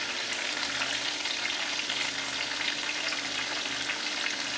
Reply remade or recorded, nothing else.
recorded